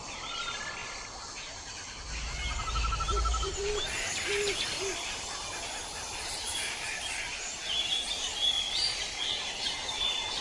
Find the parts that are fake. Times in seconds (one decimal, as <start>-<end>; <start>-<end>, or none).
3.3-7.6